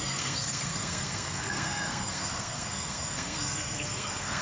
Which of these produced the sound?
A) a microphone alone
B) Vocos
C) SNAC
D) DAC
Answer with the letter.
C